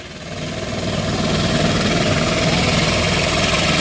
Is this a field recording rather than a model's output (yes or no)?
yes